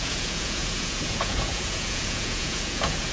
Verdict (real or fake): fake